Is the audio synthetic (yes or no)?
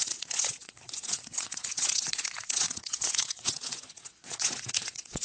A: yes